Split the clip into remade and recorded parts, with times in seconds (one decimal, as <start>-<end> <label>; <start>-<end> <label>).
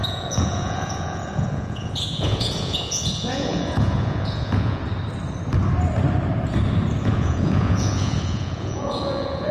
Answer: 0.0-4.8 remade; 4.8-7.0 recorded; 7.0-9.5 remade